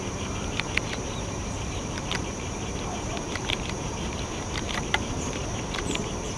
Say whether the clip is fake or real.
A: fake